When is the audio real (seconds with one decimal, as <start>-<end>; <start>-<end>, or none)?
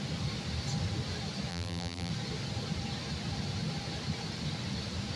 0.0-1.5; 2.1-5.2